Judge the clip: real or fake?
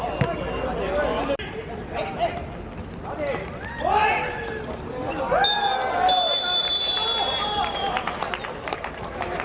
real